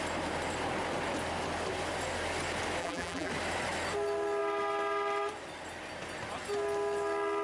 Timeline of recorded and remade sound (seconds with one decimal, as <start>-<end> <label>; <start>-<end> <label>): 0.0-2.8 recorded; 2.8-3.3 remade; 3.3-7.4 recorded